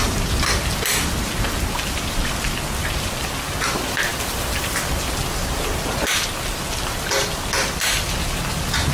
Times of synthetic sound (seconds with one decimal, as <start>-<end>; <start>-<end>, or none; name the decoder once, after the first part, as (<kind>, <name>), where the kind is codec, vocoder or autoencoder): none

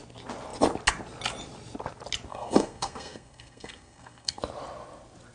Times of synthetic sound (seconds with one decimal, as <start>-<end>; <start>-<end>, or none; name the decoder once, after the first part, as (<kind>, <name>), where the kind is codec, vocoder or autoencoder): 2.3-4.4 (codec, SNAC)

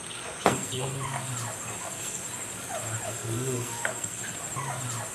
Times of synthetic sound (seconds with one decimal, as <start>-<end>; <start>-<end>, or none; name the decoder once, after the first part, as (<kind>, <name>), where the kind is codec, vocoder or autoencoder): 0.0-1.3 (codec, SNAC); 1.8-2.2; 3.1-4.2

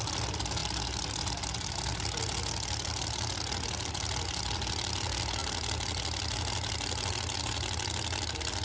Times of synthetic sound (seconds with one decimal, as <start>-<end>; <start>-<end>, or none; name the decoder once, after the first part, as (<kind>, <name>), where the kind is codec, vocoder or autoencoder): none